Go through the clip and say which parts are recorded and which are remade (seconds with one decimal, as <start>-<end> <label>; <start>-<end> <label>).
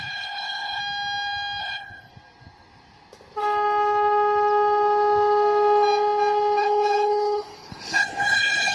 0.0-0.8 remade; 0.8-1.6 recorded; 1.6-2.1 remade; 2.1-6.6 recorded; 6.6-8.7 remade